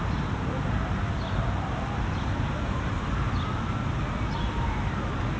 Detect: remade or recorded recorded